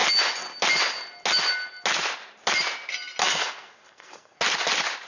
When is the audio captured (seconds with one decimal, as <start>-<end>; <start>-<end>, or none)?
0.0-3.2; 4.4-5.1